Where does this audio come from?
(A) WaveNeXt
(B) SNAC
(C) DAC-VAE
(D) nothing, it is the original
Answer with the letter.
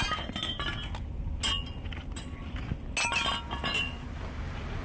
D